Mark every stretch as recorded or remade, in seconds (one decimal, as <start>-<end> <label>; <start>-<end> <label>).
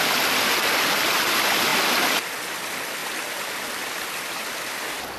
0.0-5.2 recorded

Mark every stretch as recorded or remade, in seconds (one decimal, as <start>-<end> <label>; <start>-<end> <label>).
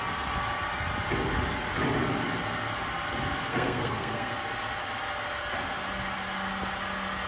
0.0-3.5 recorded; 3.5-4.3 remade; 4.3-7.3 recorded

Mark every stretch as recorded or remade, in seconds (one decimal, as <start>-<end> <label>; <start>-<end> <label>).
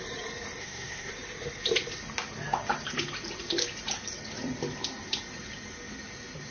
0.0-0.6 recorded; 0.6-1.1 remade; 1.1-6.5 recorded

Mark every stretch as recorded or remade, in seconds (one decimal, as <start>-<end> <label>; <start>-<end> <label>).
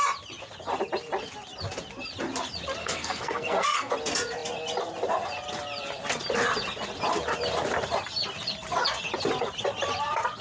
0.0-2.8 recorded; 2.8-3.9 remade; 3.9-10.4 recorded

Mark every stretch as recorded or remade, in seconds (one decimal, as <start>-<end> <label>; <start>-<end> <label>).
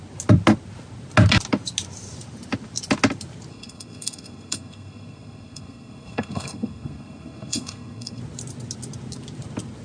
0.0-3.5 recorded; 3.5-8.2 remade; 8.2-9.8 recorded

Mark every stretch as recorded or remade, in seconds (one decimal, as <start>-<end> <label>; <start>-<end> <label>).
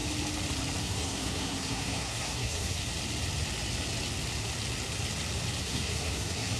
0.0-0.8 recorded; 0.8-2.8 remade; 2.8-5.6 recorded; 5.6-6.6 remade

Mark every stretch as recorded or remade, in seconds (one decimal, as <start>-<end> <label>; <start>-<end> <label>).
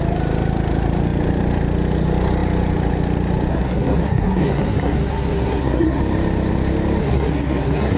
0.0-3.5 recorded; 3.5-6.0 remade; 6.0-7.0 recorded; 7.0-8.0 remade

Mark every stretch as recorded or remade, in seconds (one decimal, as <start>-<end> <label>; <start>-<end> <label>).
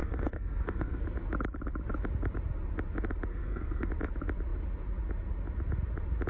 0.0-1.0 remade; 1.0-3.3 recorded; 3.3-3.9 remade; 3.9-6.3 recorded